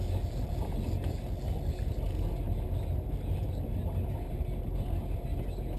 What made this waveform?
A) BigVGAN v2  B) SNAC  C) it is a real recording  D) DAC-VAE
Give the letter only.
C